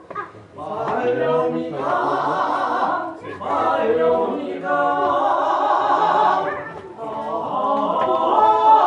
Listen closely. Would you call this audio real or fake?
real